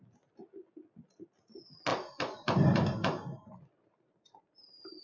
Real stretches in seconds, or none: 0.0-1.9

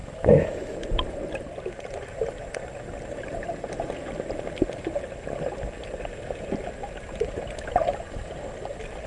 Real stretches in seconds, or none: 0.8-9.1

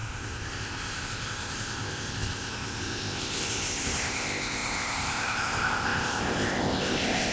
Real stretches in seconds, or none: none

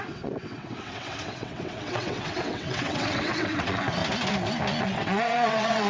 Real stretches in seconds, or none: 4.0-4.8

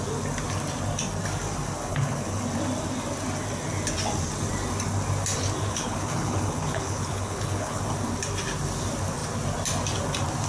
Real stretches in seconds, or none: 0.0-1.9; 2.4-5.7; 7.8-10.5

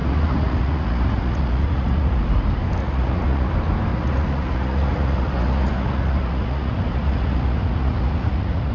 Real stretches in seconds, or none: 2.2-2.8; 3.5-3.9

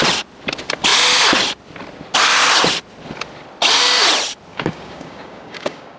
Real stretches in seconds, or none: 0.0-4.5